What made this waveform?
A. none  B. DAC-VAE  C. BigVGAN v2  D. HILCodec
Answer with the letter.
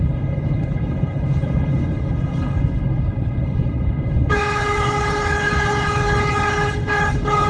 D